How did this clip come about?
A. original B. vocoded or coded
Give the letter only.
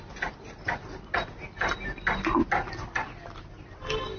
A